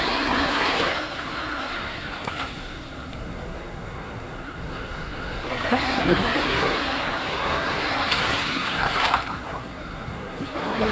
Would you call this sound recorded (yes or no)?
no